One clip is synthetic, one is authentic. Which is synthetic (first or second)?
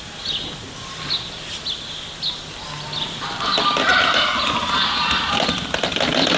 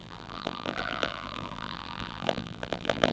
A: second